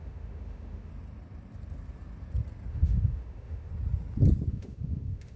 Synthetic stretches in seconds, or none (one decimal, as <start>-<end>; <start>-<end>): 0.0-0.9; 2.7-3.7; 4.5-5.4